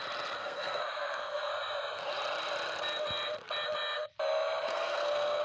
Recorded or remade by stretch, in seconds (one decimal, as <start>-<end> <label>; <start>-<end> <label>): 0.0-0.4 recorded; 0.4-1.5 remade; 1.5-4.7 recorded; 4.7-5.4 remade